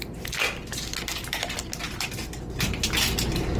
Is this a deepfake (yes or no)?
no